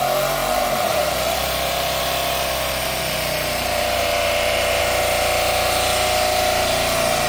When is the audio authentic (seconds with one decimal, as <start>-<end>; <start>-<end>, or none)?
0.0-0.4; 4.8-7.3